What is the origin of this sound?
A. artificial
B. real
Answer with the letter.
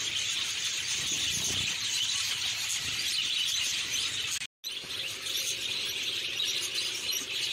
B